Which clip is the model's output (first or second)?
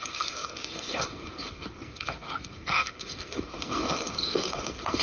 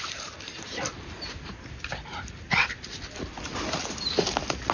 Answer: first